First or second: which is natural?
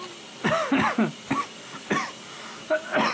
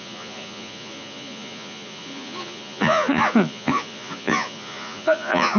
first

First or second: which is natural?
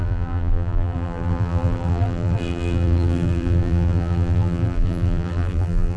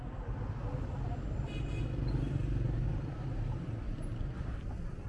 second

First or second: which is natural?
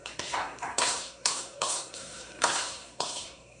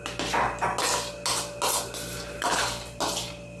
second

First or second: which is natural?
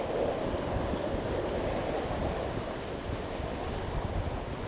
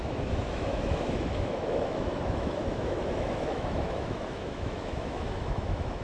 first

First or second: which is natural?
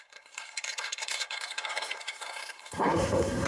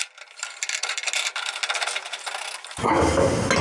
second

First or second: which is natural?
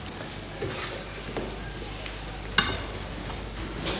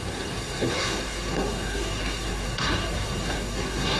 first